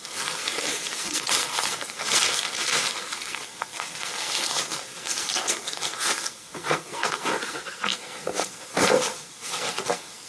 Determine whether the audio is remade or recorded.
remade